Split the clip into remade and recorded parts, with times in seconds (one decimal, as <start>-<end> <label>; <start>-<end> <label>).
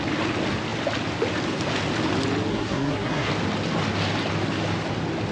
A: 0.0-2.5 recorded; 2.5-3.3 remade; 3.3-5.3 recorded